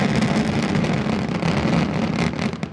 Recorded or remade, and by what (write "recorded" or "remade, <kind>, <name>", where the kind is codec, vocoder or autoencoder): recorded